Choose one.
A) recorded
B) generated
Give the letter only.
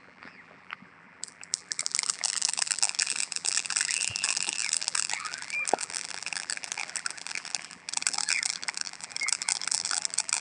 B